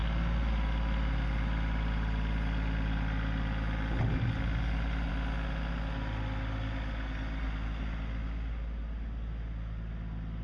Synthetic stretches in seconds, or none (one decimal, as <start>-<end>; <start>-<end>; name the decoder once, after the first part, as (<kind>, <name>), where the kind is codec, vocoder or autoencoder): none